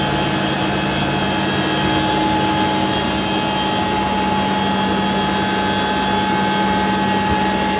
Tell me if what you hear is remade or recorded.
recorded